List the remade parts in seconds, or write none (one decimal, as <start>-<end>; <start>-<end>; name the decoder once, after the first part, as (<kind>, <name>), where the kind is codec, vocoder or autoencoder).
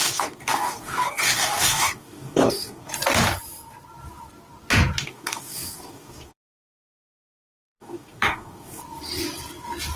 0.0-2.9 (codec, DAC); 5.0-8.8